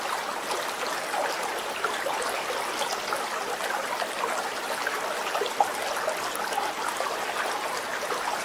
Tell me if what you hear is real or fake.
real